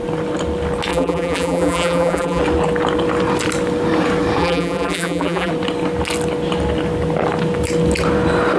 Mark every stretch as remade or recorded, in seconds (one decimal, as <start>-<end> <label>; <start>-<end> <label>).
0.0-0.9 recorded; 0.9-2.4 remade; 2.4-4.4 recorded; 4.4-5.5 remade; 5.5-8.6 recorded